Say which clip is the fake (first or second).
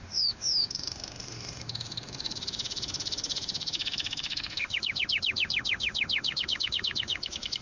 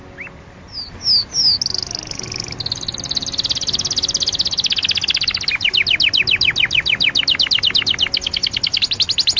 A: first